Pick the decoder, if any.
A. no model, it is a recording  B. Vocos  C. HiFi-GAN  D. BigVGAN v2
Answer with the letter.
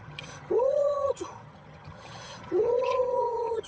C